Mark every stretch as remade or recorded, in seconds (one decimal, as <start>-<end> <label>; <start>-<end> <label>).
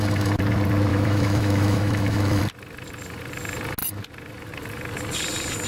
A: 0.0-0.9 recorded; 0.9-2.4 remade; 2.4-5.7 recorded